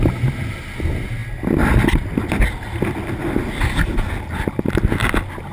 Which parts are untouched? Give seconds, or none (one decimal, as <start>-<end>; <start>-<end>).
0.0-5.5